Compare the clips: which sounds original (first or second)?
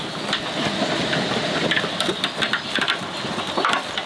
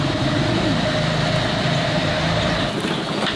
first